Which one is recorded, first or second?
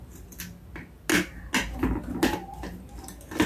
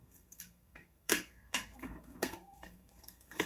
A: first